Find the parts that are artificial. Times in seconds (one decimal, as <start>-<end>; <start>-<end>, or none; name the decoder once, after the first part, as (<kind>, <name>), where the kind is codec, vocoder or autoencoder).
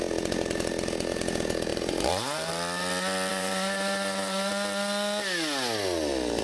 1.7-2.5 (vocoder, BigVGAN v2); 3.3-4.5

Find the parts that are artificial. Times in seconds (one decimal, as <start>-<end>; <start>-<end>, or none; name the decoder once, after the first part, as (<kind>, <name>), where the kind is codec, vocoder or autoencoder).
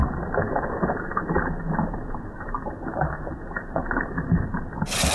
none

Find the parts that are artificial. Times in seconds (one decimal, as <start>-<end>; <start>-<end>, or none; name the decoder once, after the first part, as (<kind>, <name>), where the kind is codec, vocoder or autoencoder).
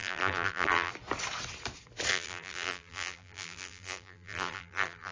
0.0-0.9 (vocoder, BigVGAN v2); 2.1-5.1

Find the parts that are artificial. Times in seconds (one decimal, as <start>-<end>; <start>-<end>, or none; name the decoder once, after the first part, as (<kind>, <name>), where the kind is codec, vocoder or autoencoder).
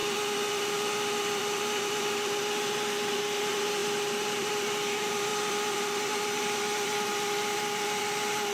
none